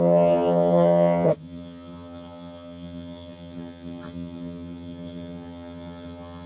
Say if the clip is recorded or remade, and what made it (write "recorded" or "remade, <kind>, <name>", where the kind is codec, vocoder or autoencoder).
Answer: remade, vocoder, HiFi-GAN